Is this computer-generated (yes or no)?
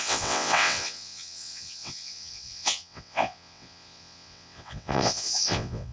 yes